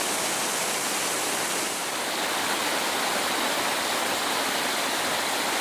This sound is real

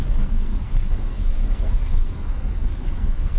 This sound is fake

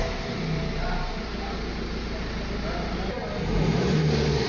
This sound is real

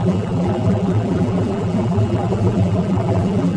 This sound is fake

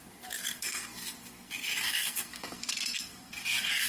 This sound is fake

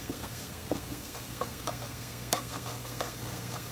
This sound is fake